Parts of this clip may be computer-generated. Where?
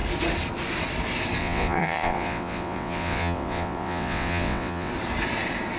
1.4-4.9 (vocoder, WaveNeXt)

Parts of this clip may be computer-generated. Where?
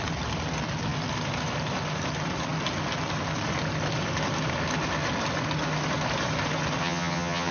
6.8-7.5 (vocoder, HiFi-GAN)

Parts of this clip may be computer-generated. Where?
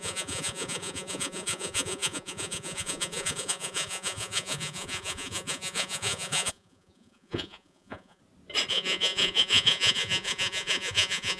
0.0-8.2 (vocoder, Vocos); 8.7-11.4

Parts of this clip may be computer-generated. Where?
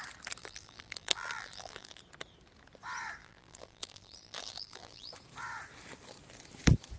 0.4-2.0 (vocoder, BigVGAN v2); 3.2-5.1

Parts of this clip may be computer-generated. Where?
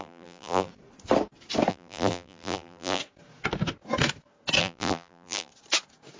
0.0-0.7 (vocoder, BigVGAN v2); 1.7-3.0; 4.6-5.5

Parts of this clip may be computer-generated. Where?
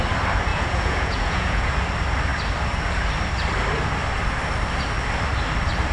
0.5-1.7 (vocoder, Vocos)